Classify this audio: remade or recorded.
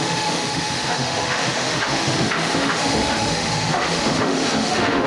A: remade